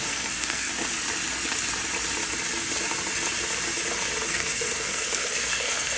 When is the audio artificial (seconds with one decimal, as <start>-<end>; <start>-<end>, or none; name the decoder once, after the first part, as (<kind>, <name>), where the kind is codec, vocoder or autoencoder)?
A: 0.0-0.7 (codec, SNAC); 4.3-6.0